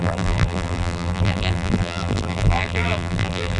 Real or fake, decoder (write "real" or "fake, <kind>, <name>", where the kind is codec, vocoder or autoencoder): fake, vocoder, BigVGAN v2